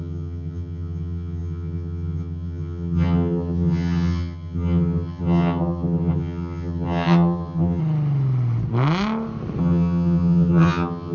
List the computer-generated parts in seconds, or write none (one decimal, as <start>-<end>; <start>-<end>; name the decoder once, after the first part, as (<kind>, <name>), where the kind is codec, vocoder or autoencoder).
0.0-7.8 (vocoder, HiFi-GAN); 9.6-11.1